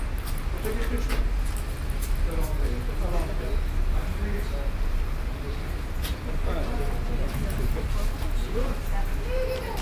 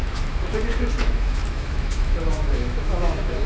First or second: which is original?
first